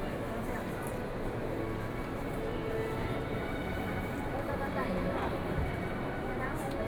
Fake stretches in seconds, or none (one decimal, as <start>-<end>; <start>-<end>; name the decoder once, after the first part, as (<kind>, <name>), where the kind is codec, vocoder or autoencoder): 3.0-6.3 (vocoder, BigVGAN v2)